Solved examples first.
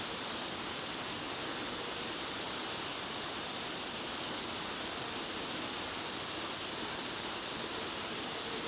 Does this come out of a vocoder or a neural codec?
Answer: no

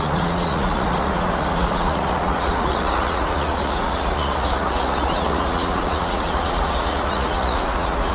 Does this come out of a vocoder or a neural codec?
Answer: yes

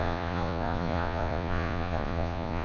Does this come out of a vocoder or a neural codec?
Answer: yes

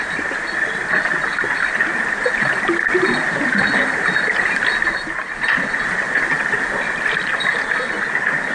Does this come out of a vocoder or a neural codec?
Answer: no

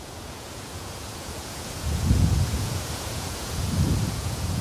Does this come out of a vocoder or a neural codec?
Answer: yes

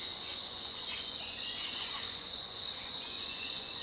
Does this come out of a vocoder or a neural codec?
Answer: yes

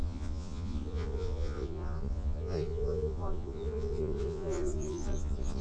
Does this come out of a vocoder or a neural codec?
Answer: yes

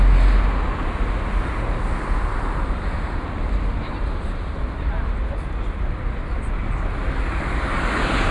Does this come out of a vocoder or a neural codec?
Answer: no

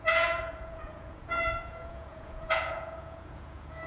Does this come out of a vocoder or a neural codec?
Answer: yes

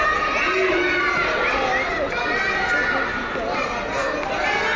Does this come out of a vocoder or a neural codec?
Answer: no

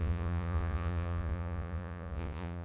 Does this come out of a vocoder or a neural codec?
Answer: yes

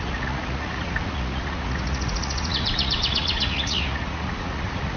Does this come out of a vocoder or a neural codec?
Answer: yes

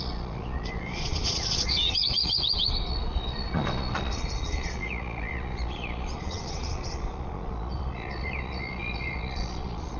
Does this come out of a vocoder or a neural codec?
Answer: yes